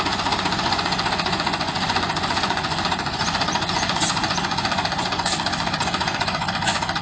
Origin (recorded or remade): remade